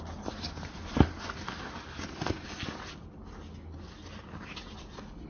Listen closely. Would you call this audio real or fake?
real